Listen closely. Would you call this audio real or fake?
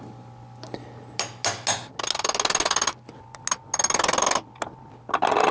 real